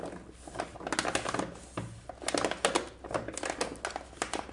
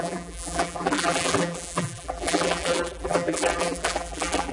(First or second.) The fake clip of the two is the second